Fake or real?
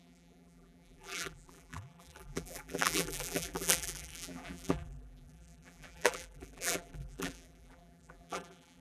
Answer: fake